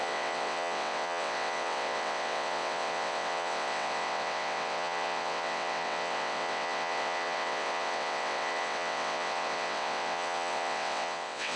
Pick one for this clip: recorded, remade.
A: remade